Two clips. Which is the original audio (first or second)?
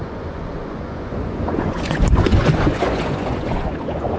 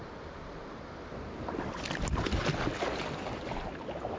second